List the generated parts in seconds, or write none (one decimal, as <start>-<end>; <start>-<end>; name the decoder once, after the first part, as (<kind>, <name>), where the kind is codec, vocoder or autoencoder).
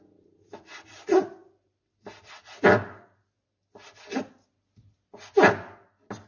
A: none